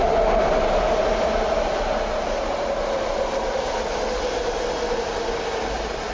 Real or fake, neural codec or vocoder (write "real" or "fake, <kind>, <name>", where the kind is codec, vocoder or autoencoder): real